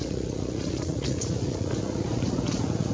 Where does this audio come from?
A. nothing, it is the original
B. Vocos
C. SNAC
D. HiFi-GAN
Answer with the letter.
B